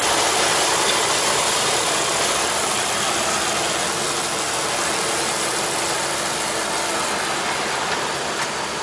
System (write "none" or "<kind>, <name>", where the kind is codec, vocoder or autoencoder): none